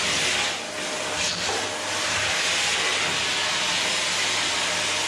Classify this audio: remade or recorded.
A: recorded